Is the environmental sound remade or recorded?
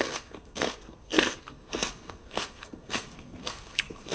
remade